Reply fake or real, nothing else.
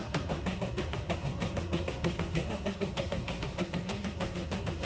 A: fake